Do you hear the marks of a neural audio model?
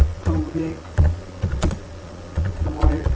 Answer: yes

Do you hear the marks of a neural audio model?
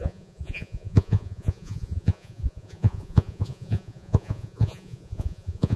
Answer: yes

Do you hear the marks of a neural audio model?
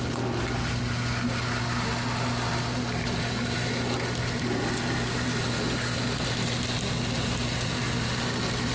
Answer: no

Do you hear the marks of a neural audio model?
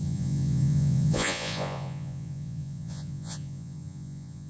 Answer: yes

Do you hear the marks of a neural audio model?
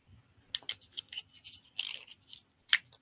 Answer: no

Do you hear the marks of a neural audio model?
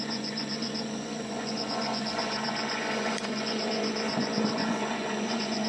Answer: yes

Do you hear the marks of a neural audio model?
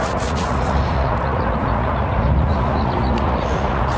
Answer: yes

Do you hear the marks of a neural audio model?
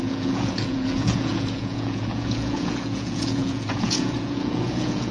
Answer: yes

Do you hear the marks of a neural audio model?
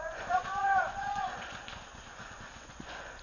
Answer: yes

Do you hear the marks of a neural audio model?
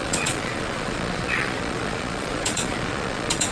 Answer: yes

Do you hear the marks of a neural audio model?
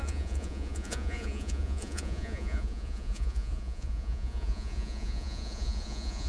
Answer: yes